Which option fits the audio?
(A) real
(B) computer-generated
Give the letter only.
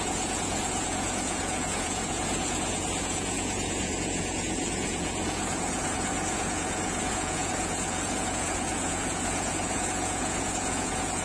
B